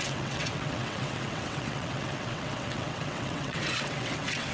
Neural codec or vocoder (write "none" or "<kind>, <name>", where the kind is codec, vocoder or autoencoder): vocoder, WaveNeXt